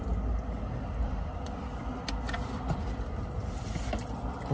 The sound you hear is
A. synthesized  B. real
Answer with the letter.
B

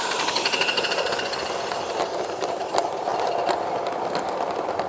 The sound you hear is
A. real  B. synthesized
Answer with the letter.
A